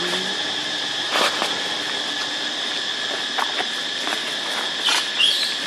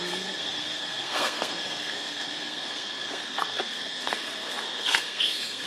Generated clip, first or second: second